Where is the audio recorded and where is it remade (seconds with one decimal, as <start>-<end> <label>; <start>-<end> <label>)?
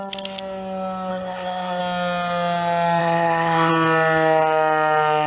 0.0-1.1 recorded; 1.1-1.8 remade; 1.8-3.0 recorded; 3.0-3.7 remade; 3.7-5.3 recorded